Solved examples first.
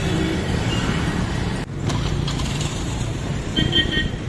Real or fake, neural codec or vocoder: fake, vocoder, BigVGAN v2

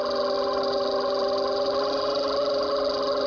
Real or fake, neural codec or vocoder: real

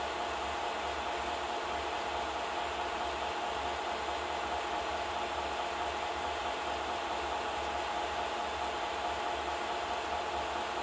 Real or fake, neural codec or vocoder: real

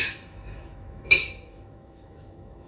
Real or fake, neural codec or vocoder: fake, autoencoder, DAC-VAE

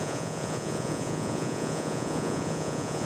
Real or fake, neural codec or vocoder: fake, vocoder, Vocos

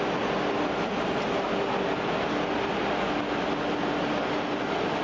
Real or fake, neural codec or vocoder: real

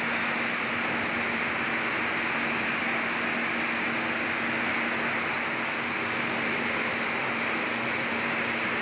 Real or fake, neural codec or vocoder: real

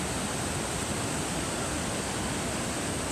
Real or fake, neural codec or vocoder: real